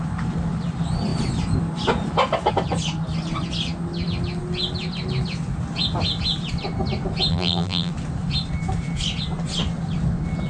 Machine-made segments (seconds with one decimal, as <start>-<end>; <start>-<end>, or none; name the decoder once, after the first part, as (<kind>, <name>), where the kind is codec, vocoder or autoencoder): 7.3-7.9 (vocoder, BigVGAN v2)